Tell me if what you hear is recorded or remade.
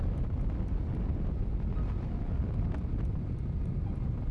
recorded